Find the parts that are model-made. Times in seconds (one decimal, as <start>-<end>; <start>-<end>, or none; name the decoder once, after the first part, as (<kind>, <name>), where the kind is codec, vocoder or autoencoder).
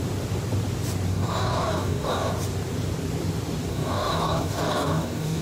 1.1-2.3 (codec, DAC); 3.7-5.4